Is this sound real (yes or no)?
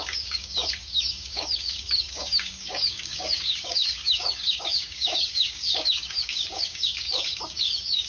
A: no